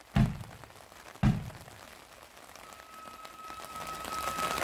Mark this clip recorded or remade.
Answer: recorded